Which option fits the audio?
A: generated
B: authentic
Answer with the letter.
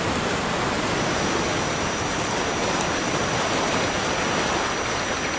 B